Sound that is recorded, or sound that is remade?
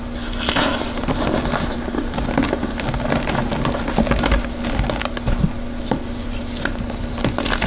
recorded